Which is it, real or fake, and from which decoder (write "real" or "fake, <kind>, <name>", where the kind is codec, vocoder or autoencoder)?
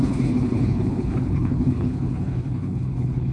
fake, codec, HILCodec